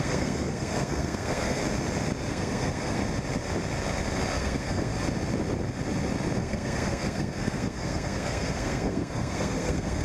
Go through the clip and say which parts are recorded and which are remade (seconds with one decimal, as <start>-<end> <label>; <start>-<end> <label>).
0.0-1.6 remade; 1.6-2.3 recorded; 2.3-3.0 remade; 3.0-4.4 recorded; 4.4-4.9 remade; 4.9-6.4 recorded; 6.4-10.0 remade